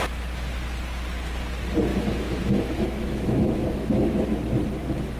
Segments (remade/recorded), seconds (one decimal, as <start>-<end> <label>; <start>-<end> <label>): 0.0-1.9 recorded; 1.9-4.4 remade; 4.4-5.2 recorded